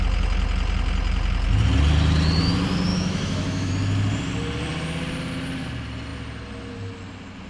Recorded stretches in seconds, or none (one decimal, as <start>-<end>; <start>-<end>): 0.0-2.9; 3.7-7.5